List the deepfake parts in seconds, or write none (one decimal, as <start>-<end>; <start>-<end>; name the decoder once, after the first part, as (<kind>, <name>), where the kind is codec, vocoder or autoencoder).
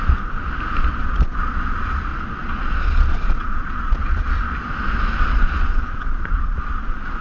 1.0-1.5 (vocoder, Vocos); 2.1-4.3; 5.7-7.2